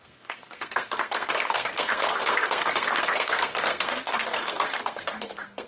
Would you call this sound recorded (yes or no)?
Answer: no